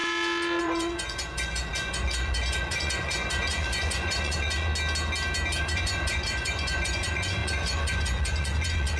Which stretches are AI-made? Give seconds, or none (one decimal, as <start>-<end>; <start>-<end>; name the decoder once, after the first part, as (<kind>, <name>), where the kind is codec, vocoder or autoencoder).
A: 0.6-4.7 (vocoder, Vocos); 5.6-9.0